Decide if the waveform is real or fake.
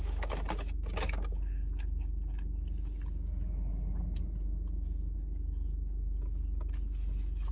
real